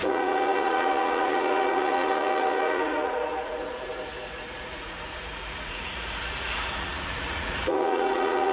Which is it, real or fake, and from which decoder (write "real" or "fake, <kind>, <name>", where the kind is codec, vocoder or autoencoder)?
fake, vocoder, Vocos